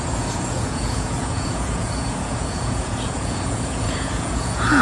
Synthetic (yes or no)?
yes